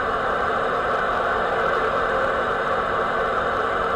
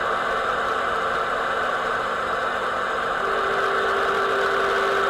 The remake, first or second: first